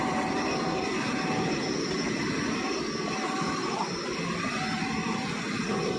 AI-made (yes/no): yes